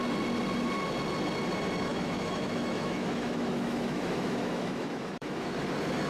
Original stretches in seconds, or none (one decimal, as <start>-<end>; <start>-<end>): 0.0-1.9; 5.6-6.1